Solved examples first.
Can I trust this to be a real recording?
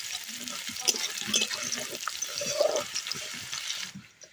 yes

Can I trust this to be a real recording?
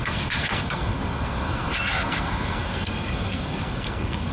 no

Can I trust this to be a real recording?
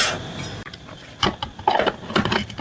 yes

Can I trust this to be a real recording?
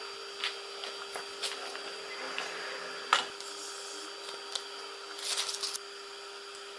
yes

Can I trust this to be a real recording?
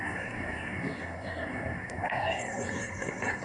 no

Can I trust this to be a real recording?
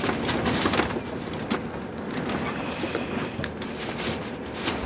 yes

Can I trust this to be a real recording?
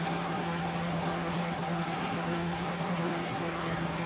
no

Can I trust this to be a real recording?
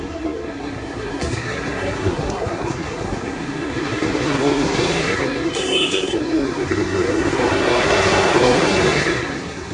no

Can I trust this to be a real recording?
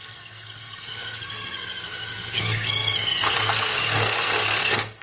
no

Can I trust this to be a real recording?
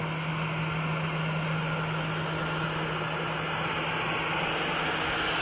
yes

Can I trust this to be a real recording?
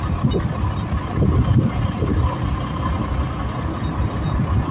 yes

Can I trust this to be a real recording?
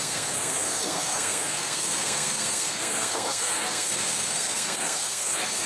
no